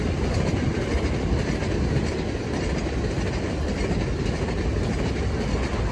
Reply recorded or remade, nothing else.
recorded